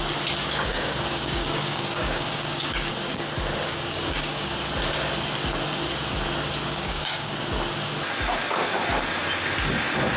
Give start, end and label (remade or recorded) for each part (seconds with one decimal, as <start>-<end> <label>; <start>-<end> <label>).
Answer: 0.0-0.4 recorded; 0.4-3.2 remade; 3.2-3.7 recorded; 3.7-4.5 remade; 4.5-6.6 recorded; 6.6-7.4 remade; 7.4-10.2 recorded